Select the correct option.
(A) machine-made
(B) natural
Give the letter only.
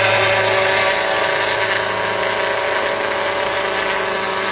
B